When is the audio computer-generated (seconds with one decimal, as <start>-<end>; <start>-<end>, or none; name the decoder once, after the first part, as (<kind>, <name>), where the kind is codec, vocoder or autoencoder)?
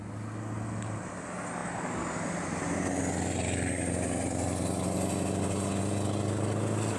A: none